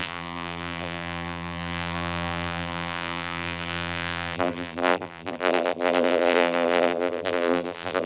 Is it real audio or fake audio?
fake